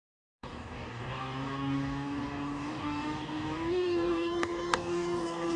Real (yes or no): no